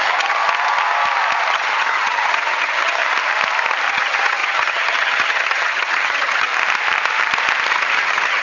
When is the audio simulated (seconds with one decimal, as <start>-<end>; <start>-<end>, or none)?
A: 0.0-0.4; 1.5-3.0; 3.9-6.5; 7.7-8.4